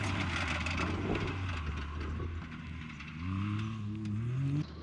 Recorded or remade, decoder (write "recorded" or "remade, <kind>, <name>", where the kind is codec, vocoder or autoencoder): recorded